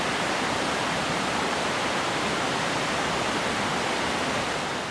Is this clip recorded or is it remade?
recorded